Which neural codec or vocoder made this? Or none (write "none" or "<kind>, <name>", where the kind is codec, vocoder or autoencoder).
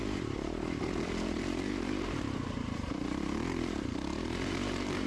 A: vocoder, BigVGAN v2